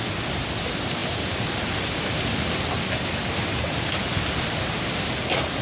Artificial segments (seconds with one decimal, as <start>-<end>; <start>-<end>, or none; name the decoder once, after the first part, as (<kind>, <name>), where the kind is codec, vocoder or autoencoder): none